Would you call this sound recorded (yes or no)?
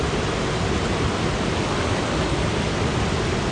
yes